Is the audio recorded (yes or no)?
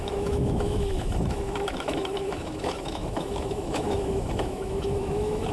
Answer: no